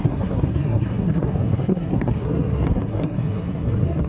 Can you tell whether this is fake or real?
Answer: fake